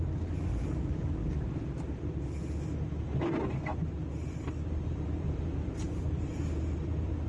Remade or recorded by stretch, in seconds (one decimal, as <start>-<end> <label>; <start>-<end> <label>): 0.0-1.2 recorded; 1.2-2.2 remade; 2.2-3.7 recorded; 3.7-7.3 remade